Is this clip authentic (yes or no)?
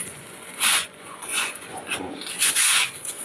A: no